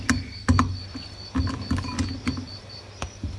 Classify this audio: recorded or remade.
recorded